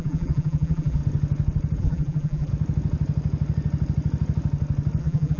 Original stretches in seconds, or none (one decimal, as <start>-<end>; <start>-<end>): 1.0-1.8; 2.5-5.0